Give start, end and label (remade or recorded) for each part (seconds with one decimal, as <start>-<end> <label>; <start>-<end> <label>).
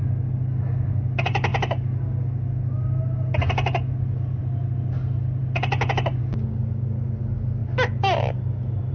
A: 0.0-8.9 recorded